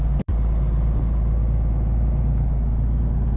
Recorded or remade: recorded